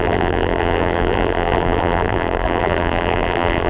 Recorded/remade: remade